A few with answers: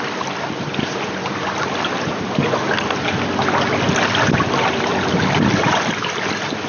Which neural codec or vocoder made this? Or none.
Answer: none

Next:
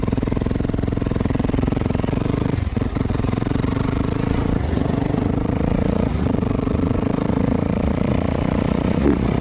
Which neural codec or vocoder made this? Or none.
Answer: vocoder, Vocos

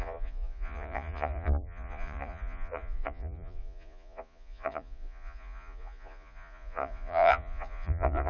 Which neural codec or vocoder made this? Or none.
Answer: vocoder, Vocos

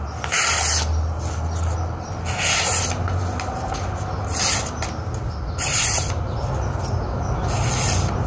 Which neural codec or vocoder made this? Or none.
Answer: none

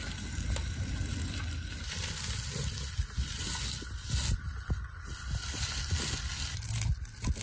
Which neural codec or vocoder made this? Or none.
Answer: none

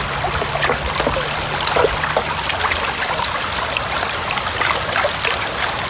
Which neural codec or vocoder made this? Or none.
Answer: none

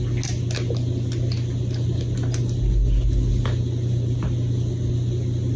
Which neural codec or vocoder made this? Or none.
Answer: none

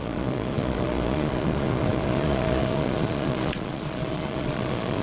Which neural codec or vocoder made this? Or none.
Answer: vocoder, Vocos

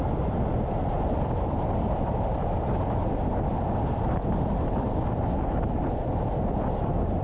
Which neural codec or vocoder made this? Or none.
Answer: none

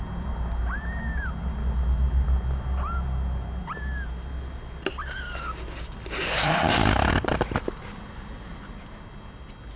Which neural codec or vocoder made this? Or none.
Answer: none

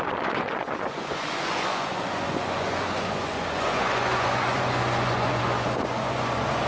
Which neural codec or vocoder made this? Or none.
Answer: vocoder, Vocos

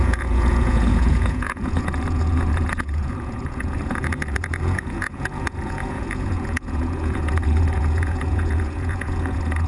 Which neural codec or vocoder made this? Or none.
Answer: vocoder, Vocos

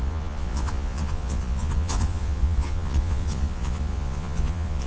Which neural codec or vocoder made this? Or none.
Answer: vocoder, Vocos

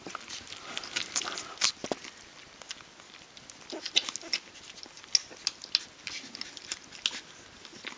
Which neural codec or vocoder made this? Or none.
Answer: none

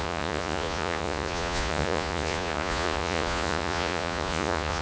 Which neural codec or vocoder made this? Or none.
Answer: vocoder, Vocos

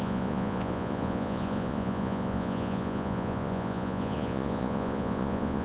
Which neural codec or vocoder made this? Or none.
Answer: vocoder, Vocos